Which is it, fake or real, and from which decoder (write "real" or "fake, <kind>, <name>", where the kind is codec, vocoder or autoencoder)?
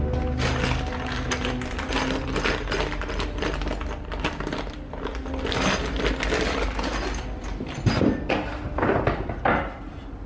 real